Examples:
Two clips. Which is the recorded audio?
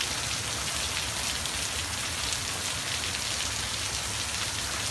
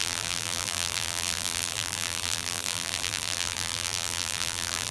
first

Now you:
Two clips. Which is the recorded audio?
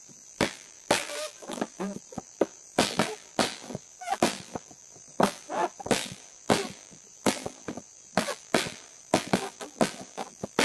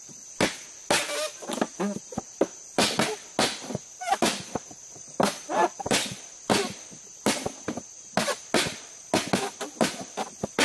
second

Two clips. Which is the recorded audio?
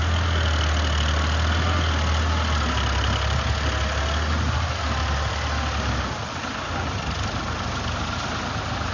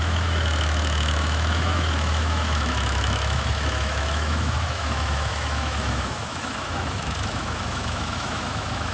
first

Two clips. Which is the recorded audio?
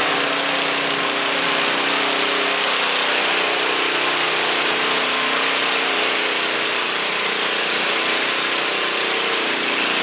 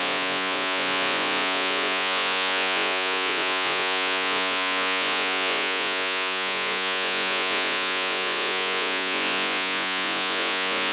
first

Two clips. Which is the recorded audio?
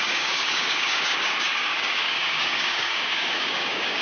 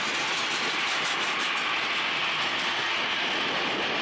second